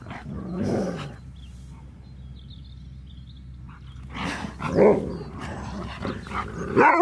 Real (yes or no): yes